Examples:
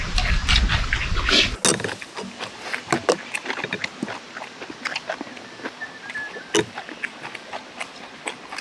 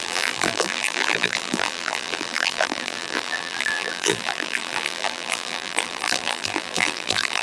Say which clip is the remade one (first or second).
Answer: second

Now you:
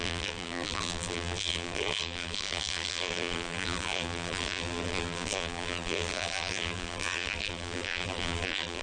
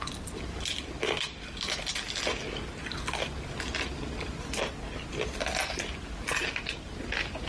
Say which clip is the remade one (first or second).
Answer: first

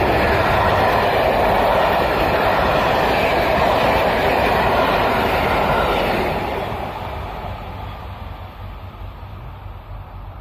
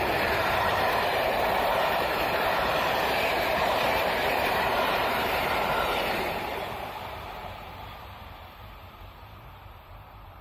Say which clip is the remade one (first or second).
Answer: second